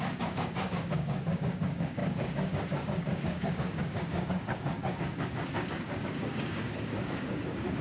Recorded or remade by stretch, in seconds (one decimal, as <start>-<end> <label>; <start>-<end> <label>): 0.0-7.8 remade